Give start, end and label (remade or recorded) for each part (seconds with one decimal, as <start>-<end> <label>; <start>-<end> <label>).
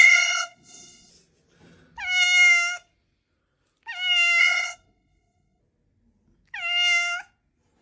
0.0-1.1 remade; 1.1-4.4 recorded; 4.4-5.6 remade; 5.6-7.8 recorded